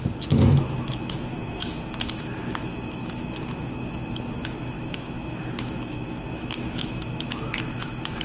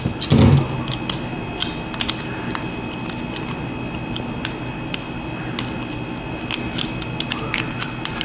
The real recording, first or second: second